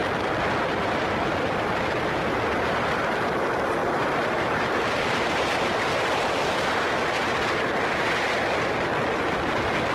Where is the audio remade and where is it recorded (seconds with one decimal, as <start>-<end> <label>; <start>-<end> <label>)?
0.0-9.9 recorded